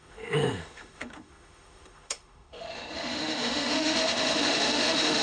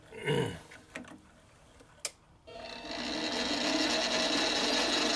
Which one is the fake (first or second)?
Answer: first